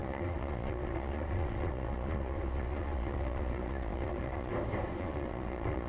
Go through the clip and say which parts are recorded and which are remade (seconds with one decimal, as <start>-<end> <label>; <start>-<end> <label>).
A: 0.0-4.5 remade; 4.5-5.0 recorded; 5.0-5.9 remade

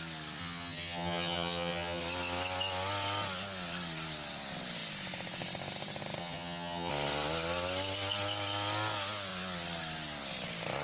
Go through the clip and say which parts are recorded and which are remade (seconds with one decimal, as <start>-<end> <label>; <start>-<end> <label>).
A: 0.0-0.4 recorded; 0.4-2.0 remade; 2.0-6.2 recorded; 6.2-6.9 remade; 6.9-10.8 recorded

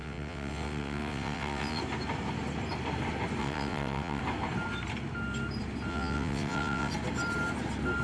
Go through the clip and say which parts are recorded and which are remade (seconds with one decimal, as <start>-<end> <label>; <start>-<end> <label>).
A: 0.0-1.8 remade; 1.8-3.4 recorded; 3.4-4.2 remade; 4.2-5.9 recorded; 5.9-6.9 remade; 6.9-8.0 recorded